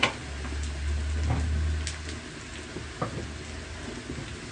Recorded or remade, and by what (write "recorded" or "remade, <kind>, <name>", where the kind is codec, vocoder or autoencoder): recorded